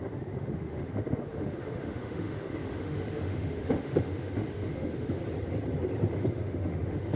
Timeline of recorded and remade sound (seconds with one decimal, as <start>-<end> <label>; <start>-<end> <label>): 0.0-5.2 remade; 5.2-6.1 recorded; 6.1-7.2 remade